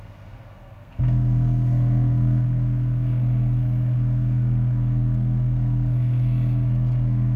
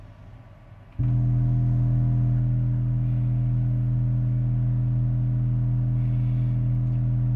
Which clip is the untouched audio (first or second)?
second